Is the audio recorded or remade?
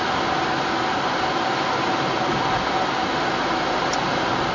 recorded